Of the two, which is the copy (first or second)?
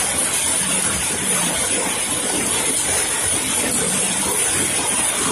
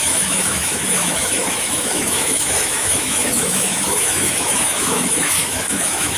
second